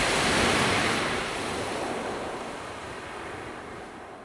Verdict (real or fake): real